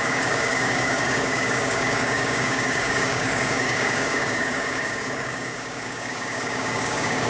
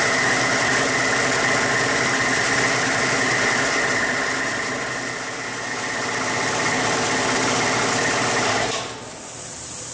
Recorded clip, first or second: second